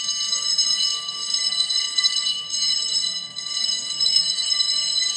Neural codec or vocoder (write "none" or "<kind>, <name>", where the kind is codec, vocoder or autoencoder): codec, SNAC